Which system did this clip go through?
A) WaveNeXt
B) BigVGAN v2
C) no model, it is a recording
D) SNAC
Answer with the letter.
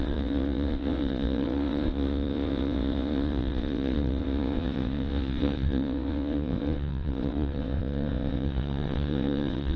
A